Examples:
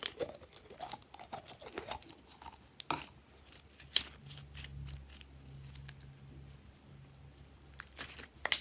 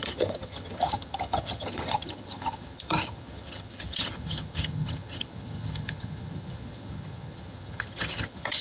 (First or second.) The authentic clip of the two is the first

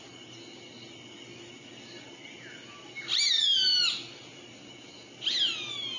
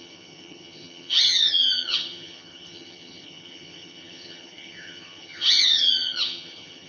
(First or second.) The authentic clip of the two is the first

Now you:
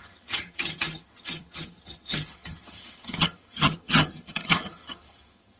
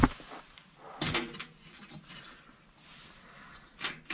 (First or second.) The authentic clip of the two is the second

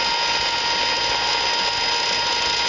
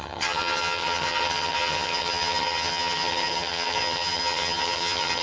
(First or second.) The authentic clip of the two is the first